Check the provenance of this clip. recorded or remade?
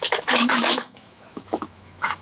remade